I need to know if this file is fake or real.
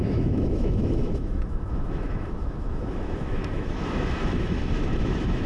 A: fake